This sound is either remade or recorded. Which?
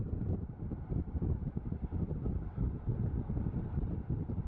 recorded